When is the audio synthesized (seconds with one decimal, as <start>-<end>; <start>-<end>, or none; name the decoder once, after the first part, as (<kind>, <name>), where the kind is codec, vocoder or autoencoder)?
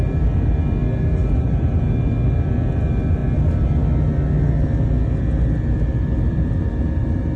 1.2-1.8 (vocoder, BigVGAN v2)